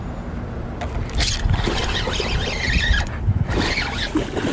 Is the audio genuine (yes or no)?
yes